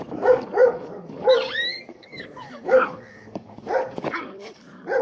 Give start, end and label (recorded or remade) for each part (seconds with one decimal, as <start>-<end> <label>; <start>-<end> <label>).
0.0-5.0 remade